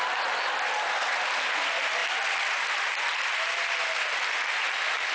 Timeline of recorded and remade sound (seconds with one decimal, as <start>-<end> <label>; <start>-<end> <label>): 0.0-5.1 recorded

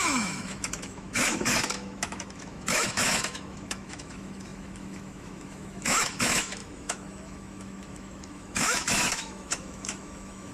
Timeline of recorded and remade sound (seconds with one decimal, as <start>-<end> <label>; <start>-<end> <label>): 0.0-10.5 remade

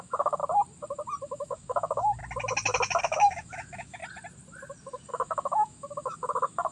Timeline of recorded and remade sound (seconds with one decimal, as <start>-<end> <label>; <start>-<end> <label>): 0.0-0.4 remade; 0.4-1.2 recorded; 1.2-2.2 remade; 2.2-3.0 recorded; 3.0-4.0 remade; 4.0-5.1 recorded; 5.1-6.7 remade

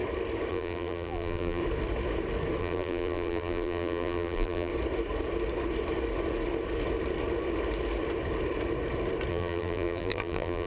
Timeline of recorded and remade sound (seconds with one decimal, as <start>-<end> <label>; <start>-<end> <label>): 0.0-0.5 recorded; 0.5-1.6 remade; 1.6-2.6 recorded; 2.6-4.7 remade; 4.7-9.3 recorded; 9.3-10.7 remade

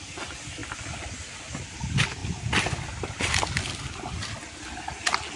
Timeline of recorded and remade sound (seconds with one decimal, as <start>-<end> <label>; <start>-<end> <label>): 0.0-0.6 remade; 0.6-1.1 recorded; 1.1-2.2 remade; 2.2-3.6 recorded; 3.6-4.4 remade; 4.4-5.4 recorded

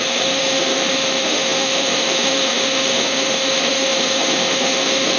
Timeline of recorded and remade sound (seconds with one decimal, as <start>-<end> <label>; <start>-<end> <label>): 0.0-5.2 remade

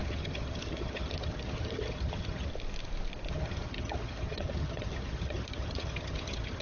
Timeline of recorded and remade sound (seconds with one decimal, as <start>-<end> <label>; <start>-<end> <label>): 0.0-2.5 remade; 2.5-3.3 recorded; 3.3-6.6 remade